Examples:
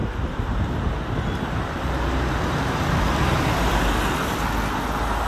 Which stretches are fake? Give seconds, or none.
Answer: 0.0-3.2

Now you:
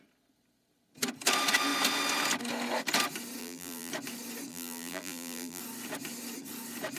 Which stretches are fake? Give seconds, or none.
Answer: 3.4-3.9; 4.5-5.6

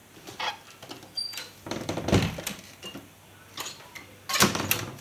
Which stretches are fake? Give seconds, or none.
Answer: 1.2-3.2